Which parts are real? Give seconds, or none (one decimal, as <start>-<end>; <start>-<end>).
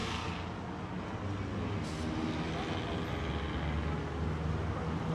0.0-5.1